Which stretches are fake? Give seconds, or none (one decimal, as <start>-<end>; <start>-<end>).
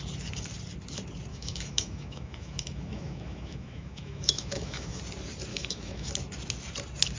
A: 1.3-5.0; 5.5-6.1